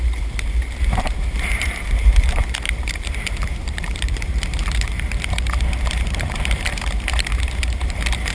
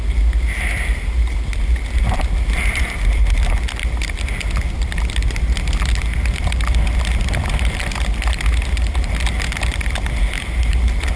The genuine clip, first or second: second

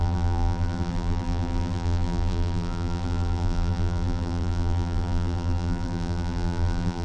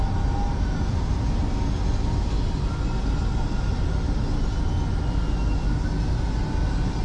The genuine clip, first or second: second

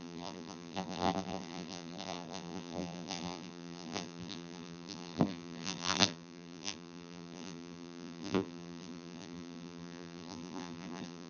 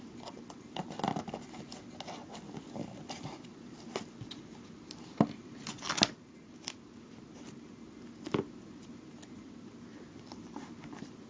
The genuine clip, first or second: second